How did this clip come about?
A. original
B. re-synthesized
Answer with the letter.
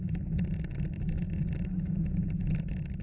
A